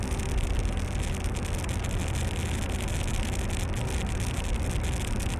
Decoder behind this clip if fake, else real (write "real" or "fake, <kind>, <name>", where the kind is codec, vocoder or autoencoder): real